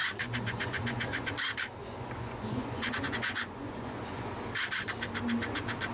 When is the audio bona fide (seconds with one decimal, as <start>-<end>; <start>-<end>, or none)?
1.3-1.8; 4.3-5.9